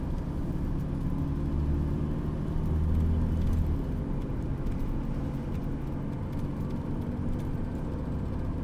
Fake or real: real